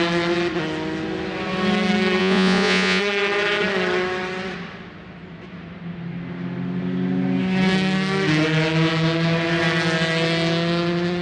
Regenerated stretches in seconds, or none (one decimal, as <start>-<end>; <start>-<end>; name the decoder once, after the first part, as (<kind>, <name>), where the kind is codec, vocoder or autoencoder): 2.2-3.0 (vocoder, Vocos)